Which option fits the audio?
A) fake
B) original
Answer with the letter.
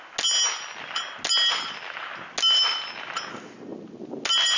B